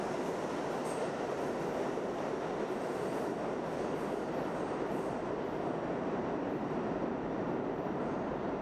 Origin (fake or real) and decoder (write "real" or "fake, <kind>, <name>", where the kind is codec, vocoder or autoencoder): real